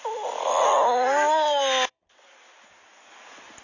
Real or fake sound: real